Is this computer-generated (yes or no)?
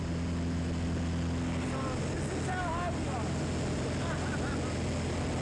no